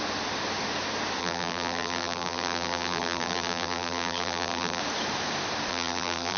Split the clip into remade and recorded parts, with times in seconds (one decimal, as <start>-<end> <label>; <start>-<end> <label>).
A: 0.0-1.2 recorded; 1.2-4.8 remade; 4.8-5.7 recorded; 5.7-6.4 remade